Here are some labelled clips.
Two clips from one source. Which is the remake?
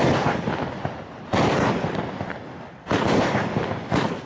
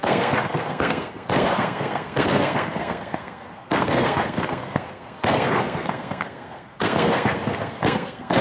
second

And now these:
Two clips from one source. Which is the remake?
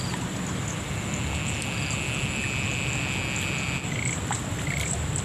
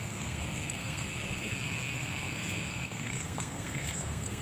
second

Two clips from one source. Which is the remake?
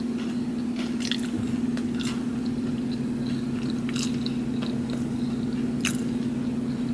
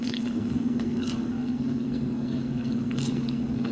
second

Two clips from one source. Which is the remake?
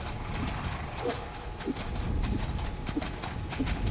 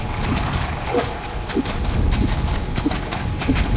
second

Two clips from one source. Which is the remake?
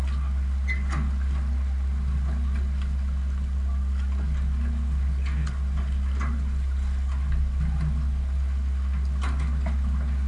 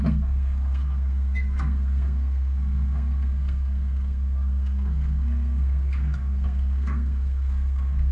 second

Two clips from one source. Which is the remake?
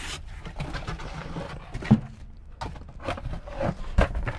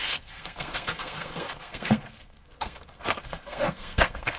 second